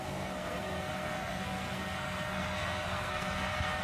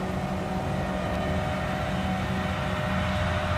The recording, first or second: second